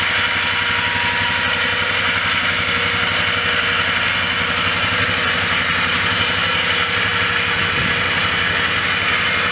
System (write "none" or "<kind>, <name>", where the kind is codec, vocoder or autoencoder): none